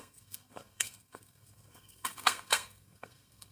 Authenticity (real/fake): fake